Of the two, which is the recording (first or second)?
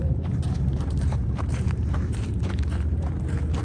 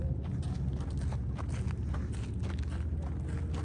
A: second